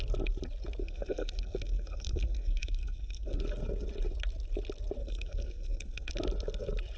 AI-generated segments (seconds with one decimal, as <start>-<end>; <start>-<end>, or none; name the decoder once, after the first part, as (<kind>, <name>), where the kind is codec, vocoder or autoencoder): 0.8-3.4 (codec, SNAC); 5.0-6.1